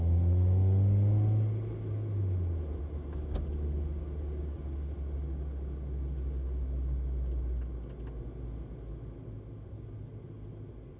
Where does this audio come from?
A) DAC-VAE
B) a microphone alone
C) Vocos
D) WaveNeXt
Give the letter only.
B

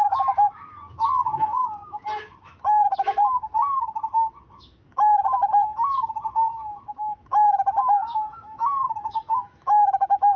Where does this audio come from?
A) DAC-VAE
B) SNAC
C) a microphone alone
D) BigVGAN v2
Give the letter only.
A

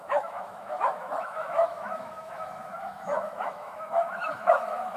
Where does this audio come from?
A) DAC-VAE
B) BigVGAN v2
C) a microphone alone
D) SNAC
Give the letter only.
A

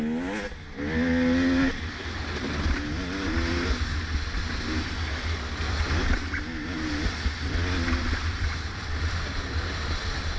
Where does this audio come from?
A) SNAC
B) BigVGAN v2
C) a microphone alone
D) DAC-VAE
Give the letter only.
C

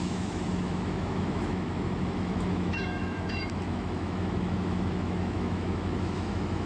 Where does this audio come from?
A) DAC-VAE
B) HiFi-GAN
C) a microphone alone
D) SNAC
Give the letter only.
A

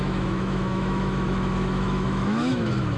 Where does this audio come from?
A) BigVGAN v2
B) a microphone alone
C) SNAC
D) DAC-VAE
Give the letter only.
D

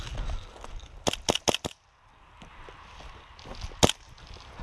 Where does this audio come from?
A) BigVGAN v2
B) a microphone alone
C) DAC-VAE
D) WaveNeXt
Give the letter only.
B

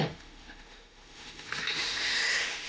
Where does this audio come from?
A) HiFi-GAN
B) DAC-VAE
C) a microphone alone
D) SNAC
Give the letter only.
B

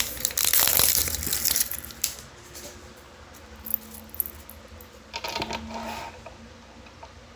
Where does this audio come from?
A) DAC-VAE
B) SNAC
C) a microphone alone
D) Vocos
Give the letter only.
C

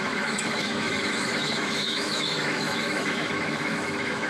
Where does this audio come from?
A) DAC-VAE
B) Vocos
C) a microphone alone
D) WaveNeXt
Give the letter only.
A